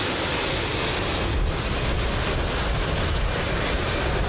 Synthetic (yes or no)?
no